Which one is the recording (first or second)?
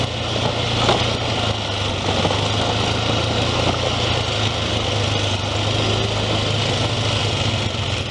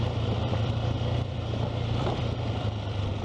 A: first